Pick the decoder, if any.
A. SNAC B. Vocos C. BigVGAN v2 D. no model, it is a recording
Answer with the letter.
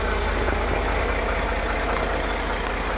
D